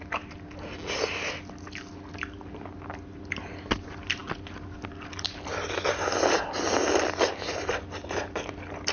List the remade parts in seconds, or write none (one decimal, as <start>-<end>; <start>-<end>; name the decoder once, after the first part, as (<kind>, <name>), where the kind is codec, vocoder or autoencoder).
none